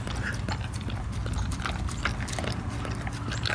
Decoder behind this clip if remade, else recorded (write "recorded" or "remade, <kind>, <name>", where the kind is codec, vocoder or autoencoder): recorded